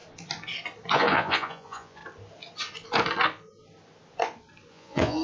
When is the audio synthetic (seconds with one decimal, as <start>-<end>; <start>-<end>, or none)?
0.9-2.0; 4.7-5.2